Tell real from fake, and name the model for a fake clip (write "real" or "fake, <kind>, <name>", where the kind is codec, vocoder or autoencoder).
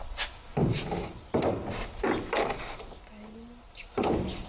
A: real